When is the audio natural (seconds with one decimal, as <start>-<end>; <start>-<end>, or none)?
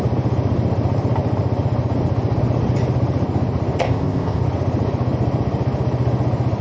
0.0-3.8; 4.4-6.6